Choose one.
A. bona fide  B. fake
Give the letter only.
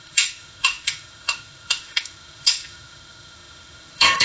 B